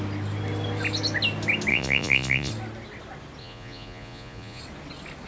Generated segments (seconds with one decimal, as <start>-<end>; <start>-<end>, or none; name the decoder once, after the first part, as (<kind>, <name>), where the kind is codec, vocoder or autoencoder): 1.7-2.5 (vocoder, Vocos); 3.4-4.6